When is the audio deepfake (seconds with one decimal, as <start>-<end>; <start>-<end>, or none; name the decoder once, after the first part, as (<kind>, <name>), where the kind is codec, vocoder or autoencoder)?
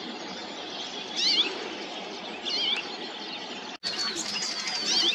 none